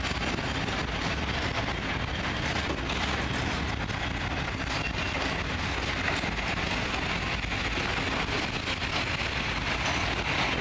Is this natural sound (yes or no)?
yes